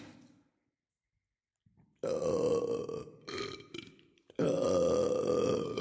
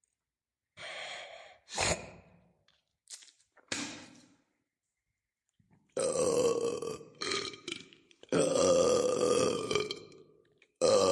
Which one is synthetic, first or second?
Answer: second